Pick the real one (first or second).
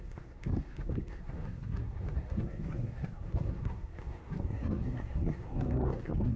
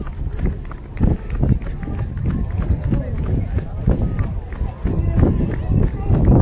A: second